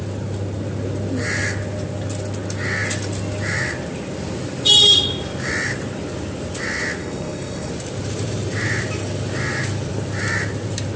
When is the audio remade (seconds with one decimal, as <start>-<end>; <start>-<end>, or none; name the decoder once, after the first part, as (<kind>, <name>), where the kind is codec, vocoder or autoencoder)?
7.0-7.7 (codec, SNAC)